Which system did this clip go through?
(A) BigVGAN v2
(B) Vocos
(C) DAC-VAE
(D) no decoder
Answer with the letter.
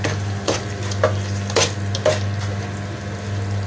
D